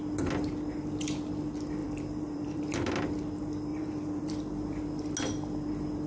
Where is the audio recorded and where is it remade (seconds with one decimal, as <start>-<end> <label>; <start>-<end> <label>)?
0.0-1.8 recorded; 1.8-2.6 remade; 2.6-3.7 recorded; 3.7-4.8 remade; 4.8-6.1 recorded